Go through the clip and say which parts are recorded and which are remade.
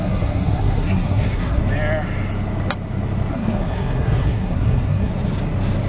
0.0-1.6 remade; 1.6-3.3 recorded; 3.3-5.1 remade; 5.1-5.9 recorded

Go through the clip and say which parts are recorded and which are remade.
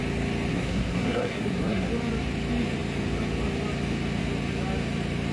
0.0-0.5 recorded; 0.5-1.9 remade; 1.9-5.3 recorded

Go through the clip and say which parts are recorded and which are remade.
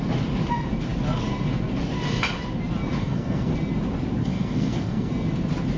0.0-3.0 recorded; 3.0-3.5 remade; 3.5-4.2 recorded; 4.2-5.1 remade; 5.1-5.8 recorded